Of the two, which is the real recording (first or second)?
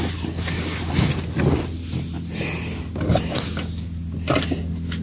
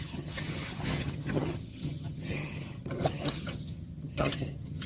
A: first